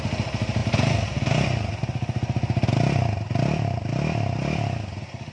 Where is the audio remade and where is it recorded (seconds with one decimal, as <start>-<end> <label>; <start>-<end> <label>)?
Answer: 0.0-5.3 recorded